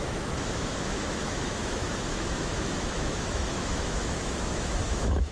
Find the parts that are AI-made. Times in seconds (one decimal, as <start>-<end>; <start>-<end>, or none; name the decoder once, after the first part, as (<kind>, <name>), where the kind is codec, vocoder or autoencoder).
0.0-5.3 (autoencoder, DAC-VAE)